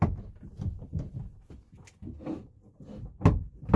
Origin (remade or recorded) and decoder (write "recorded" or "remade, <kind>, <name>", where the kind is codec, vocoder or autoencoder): recorded